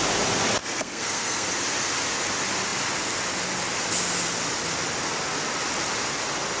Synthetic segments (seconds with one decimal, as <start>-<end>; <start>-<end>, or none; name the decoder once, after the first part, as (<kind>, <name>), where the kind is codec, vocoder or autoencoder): 0.6-1.5 (codec, SNAC)